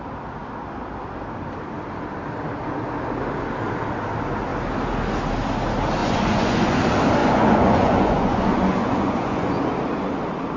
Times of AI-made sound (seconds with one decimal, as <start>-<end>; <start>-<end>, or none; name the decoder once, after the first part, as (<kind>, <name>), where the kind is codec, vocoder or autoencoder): 6.0-6.8 (vocoder, Vocos); 7.2-9.6